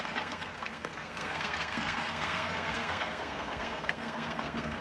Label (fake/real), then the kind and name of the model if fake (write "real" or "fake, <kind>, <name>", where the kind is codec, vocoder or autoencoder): fake, codec, SNAC